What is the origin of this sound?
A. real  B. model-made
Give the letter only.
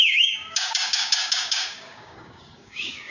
B